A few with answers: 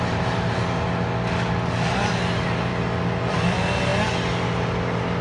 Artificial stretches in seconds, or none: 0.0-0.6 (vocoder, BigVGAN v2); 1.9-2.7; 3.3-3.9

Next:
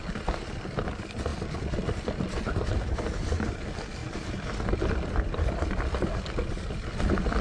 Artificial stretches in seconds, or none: none

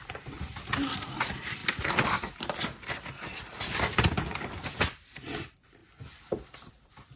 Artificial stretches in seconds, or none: 0.0-1.6 (vocoder, BigVGAN v2); 4.0-5.8; 6.7-7.2

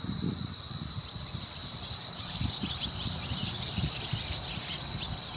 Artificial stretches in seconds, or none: 1.6-4.8 (vocoder, BigVGAN v2)

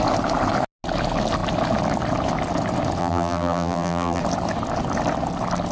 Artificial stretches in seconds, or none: 3.0-4.2 (vocoder, BigVGAN v2)

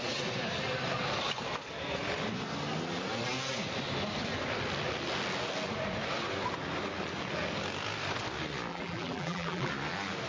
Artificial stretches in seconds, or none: 8.7-9.7 (vocoder, BigVGAN v2)

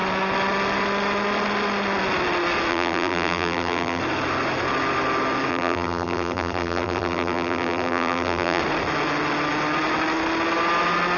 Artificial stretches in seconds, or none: 2.7-4.0 (vocoder, BigVGAN v2); 5.5-8.6

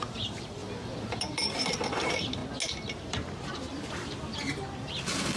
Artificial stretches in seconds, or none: 0.0-0.6 (vocoder, BigVGAN v2); 1.2-2.4; 2.9-3.7